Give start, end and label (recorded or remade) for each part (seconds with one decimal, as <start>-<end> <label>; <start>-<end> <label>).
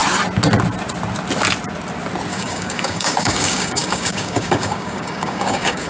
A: 0.0-2.3 recorded; 2.3-5.9 remade